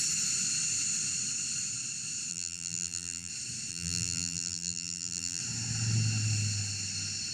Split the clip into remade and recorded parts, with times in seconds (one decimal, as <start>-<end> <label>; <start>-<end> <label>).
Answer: 0.0-2.3 recorded; 2.3-3.3 remade; 3.3-3.7 recorded; 3.7-5.4 remade; 5.4-7.3 recorded